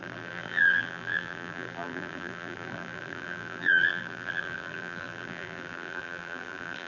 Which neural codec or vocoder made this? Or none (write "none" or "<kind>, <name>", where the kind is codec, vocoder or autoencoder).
vocoder, BigVGAN v2